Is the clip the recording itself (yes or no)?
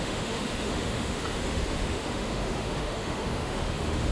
no